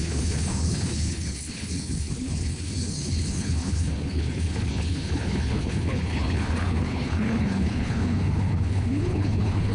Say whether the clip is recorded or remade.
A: remade